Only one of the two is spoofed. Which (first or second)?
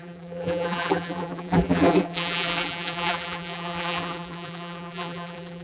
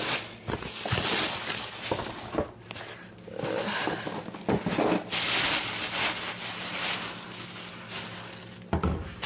first